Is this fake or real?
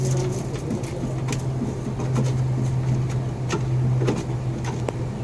real